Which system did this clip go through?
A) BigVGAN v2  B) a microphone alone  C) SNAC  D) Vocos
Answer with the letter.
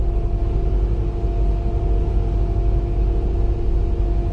B